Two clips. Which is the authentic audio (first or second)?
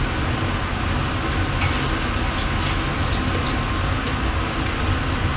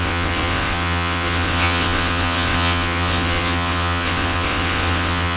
first